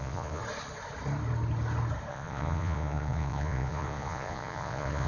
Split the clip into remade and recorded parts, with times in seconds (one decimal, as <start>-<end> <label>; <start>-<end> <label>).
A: 0.0-0.4 remade; 0.4-2.1 recorded; 2.1-5.1 remade